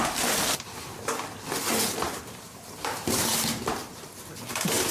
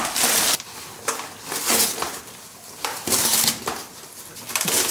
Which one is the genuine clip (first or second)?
second